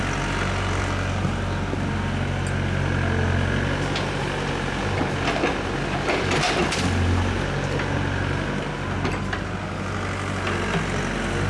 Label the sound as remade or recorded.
recorded